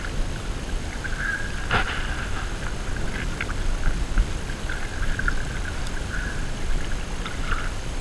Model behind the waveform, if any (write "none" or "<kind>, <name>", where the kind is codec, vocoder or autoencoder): none